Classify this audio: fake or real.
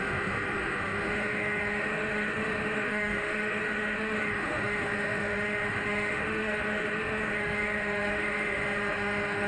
fake